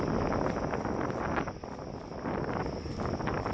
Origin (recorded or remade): recorded